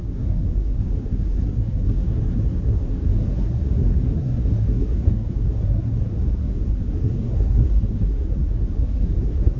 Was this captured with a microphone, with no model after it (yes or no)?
no